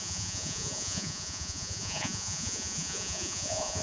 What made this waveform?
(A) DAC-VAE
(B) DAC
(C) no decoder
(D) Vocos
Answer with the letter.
D